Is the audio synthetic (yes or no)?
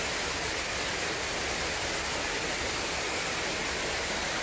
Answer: no